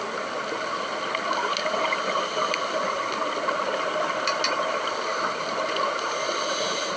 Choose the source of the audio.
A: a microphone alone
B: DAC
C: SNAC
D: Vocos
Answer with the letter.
A